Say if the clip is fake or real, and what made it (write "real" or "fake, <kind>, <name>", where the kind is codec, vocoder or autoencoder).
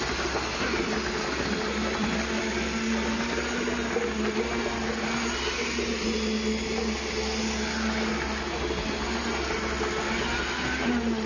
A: real